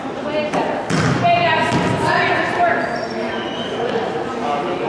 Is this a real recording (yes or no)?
yes